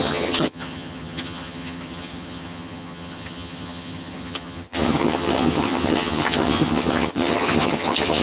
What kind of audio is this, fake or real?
fake